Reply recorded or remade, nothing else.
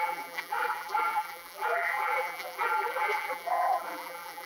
remade